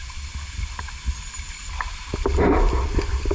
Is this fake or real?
real